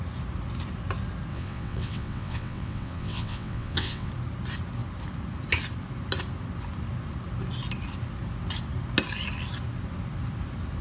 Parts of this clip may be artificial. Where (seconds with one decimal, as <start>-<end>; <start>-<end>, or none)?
1.3-4.1